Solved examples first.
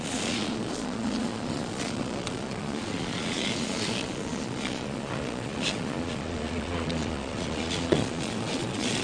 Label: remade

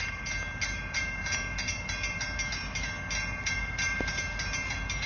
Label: recorded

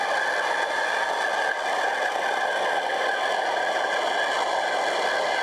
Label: recorded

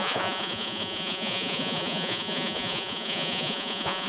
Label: remade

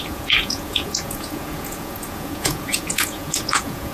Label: remade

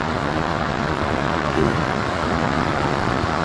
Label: remade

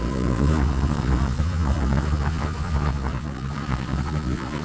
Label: remade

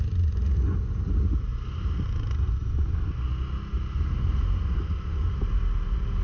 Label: recorded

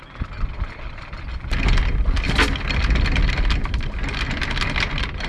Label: recorded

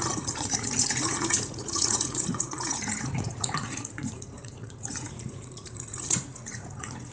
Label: remade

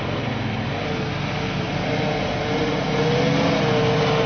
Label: recorded